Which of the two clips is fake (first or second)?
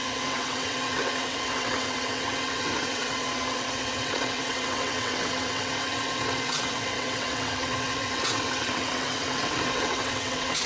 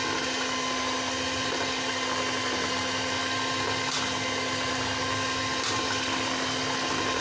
first